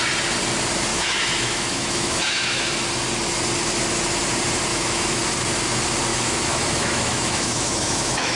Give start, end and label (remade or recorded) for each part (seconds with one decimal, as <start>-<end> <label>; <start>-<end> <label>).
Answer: 0.0-0.9 recorded; 0.9-2.7 remade; 2.7-4.7 recorded; 4.7-5.2 remade; 5.2-6.1 recorded; 6.1-8.4 remade